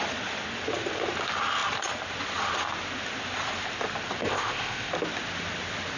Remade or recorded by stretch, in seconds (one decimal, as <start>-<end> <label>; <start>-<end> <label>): 0.0-4.2 recorded; 4.2-4.9 remade; 4.9-6.0 recorded